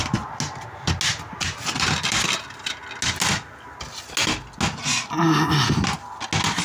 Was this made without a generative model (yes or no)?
yes